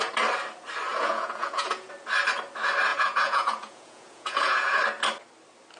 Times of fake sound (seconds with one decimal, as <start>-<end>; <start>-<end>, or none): 0.9-1.9; 2.9-4.8